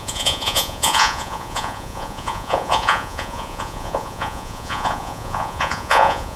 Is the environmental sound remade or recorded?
remade